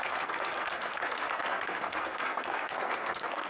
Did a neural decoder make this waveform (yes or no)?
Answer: yes